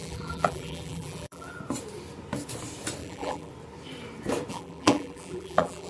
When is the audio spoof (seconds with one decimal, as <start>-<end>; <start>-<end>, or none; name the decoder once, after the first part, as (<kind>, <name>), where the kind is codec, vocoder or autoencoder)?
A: 0.0-1.6 (vocoder, BigVGAN v2); 3.0-3.5; 4.5-5.9